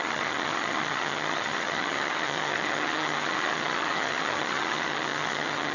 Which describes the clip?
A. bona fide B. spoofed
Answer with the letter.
B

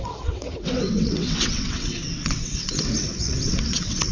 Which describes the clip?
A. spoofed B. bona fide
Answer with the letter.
A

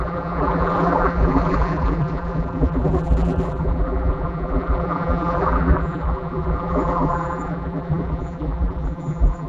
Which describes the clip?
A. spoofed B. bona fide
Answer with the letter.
A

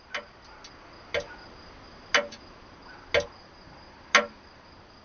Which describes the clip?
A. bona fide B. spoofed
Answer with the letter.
A